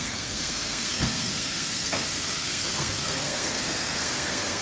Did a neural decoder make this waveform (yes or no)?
yes